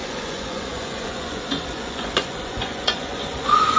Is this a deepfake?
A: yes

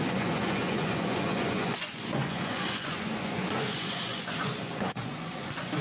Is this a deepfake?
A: yes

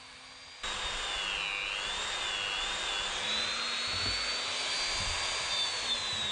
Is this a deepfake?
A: no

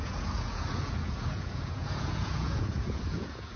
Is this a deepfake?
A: yes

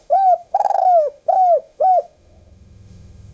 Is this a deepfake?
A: yes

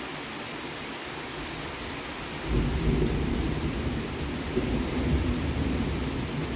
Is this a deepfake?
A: no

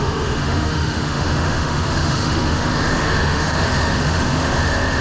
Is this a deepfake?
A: yes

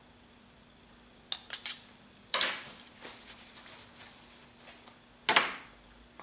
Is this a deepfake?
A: no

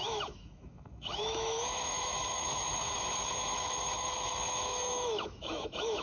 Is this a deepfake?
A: yes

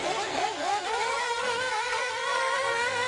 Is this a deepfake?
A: yes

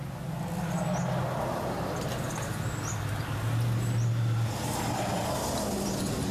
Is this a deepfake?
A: no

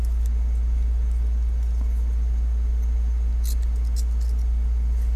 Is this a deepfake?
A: no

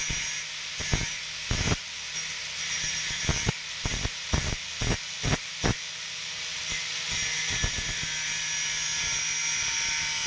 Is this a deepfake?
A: no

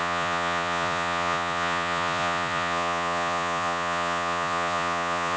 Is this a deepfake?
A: yes